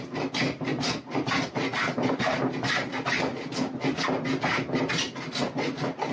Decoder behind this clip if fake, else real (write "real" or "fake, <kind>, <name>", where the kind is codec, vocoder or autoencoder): real